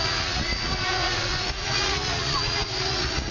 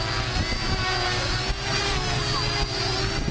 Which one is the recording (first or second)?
second